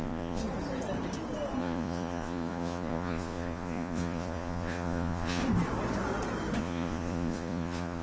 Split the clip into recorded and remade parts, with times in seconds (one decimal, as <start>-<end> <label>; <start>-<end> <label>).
0.0-0.4 remade; 0.4-1.6 recorded; 1.6-5.4 remade; 5.4-6.6 recorded; 6.6-8.0 remade